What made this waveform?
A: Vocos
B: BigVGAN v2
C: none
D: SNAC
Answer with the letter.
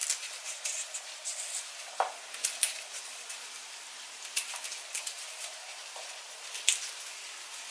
C